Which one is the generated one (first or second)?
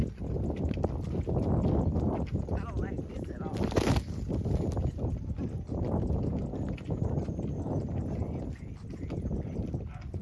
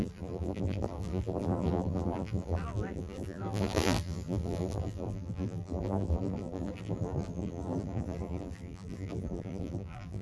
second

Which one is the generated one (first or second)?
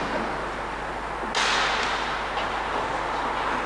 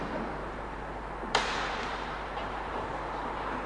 second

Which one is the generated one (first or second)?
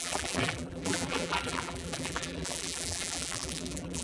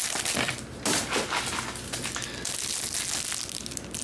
first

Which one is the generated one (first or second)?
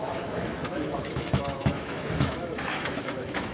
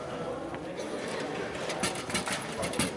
first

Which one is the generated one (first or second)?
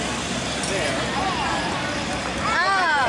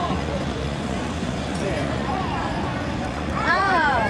second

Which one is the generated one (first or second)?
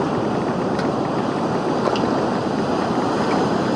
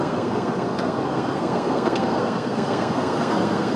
second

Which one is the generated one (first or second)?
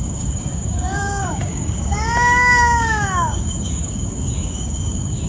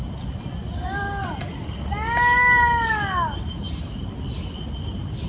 first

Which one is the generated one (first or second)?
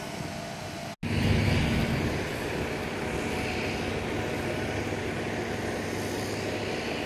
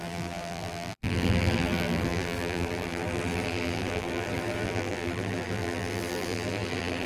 second